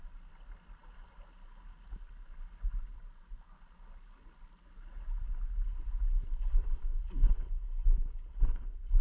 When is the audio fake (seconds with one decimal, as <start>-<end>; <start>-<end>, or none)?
none